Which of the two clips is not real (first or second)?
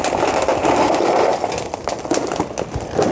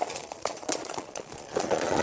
second